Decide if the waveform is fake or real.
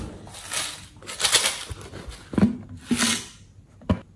real